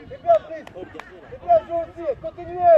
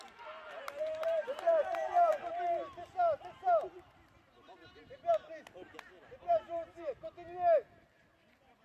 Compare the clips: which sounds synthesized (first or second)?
first